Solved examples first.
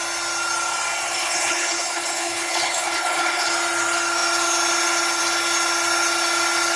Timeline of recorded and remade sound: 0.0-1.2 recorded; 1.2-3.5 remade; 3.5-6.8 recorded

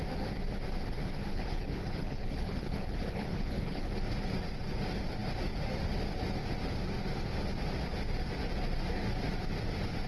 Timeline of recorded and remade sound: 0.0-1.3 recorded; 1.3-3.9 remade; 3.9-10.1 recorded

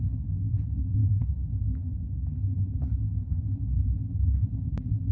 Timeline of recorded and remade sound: 0.0-5.1 remade

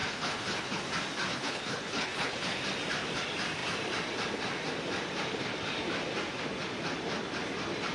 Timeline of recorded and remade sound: 0.0-0.8 remade; 0.8-1.3 recorded; 1.3-2.6 remade; 2.6-7.9 recorded